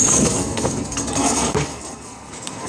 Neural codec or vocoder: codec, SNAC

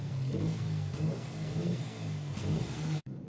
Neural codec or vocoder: codec, SNAC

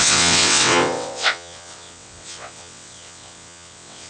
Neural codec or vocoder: vocoder, WaveNeXt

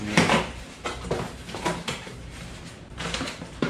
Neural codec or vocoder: vocoder, BigVGAN v2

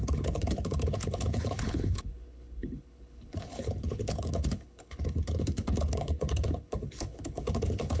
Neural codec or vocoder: codec, HILCodec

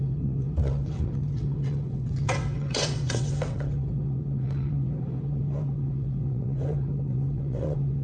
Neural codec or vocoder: vocoder, WaveNeXt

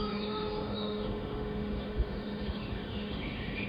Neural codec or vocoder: autoencoder, DAC-VAE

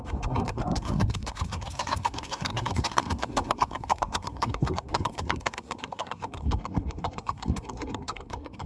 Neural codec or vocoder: codec, SNAC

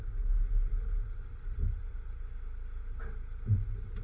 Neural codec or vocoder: none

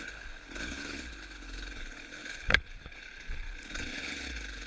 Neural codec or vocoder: codec, HILCodec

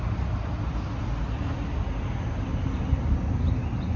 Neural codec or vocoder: none